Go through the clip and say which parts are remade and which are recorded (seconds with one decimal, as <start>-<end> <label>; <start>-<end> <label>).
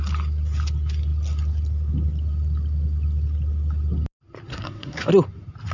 0.0-4.5 recorded; 4.5-5.1 remade; 5.1-5.7 recorded